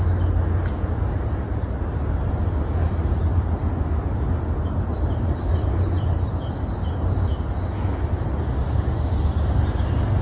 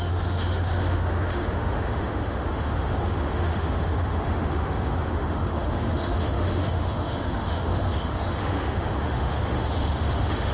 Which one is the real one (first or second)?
first